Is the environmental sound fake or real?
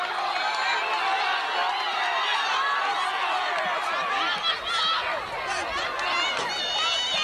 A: real